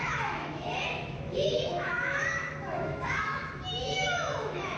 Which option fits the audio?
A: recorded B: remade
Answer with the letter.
B